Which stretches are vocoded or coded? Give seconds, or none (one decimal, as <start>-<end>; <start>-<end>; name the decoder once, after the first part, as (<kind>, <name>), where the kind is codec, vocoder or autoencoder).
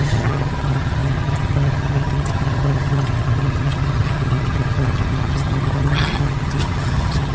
0.0-7.3 (vocoder, HiFi-GAN)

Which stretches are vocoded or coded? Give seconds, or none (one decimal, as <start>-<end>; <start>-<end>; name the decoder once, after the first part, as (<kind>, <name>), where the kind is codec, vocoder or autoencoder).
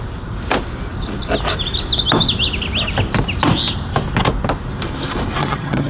5.4-5.9 (vocoder, HiFi-GAN)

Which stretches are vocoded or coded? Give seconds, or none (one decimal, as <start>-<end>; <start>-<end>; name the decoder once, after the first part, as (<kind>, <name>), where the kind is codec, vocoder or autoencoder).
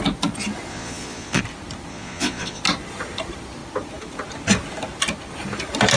0.7-1.4 (vocoder, Vocos); 1.9-2.6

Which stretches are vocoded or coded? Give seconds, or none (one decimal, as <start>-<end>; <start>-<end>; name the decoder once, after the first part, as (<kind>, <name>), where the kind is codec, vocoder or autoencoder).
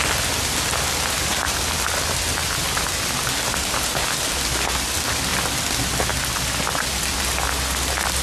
none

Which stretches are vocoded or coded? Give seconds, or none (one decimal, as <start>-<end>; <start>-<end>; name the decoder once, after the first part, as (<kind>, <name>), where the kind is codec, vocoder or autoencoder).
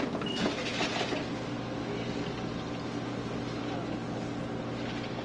none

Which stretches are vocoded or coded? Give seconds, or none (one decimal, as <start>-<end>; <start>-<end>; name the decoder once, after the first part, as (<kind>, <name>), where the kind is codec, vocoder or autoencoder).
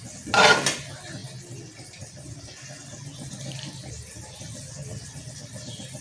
none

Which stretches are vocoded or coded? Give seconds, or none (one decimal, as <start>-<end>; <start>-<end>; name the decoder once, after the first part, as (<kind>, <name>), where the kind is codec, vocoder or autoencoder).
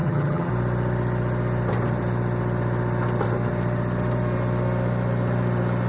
0.0-0.5 (vocoder, HiFi-GAN)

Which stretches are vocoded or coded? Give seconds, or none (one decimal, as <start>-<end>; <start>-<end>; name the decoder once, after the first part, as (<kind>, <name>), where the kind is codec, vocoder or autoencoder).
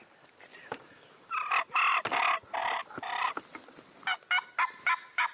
0.5-1.3 (codec, DAC)